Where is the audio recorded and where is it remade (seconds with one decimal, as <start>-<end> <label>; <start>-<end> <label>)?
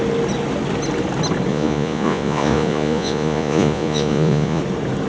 0.0-1.5 recorded; 1.5-4.6 remade; 4.6-5.1 recorded